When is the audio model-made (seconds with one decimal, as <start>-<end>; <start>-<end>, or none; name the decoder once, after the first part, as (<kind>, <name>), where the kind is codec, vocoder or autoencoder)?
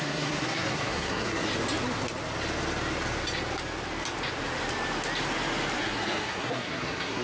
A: 0.0-1.5 (codec, SNAC); 5.8-7.2